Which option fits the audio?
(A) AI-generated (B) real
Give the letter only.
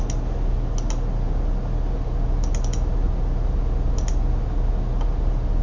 B